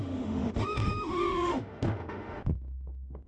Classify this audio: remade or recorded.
remade